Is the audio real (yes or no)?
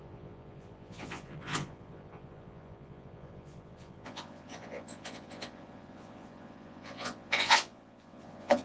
no